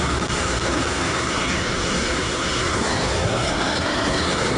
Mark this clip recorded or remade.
remade